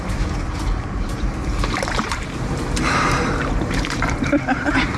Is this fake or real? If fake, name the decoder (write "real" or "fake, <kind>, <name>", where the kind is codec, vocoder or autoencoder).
fake, vocoder, BigVGAN v2